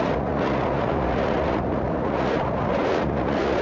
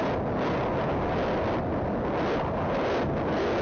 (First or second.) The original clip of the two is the second